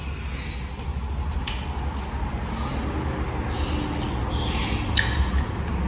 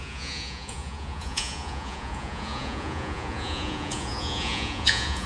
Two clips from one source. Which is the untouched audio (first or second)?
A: first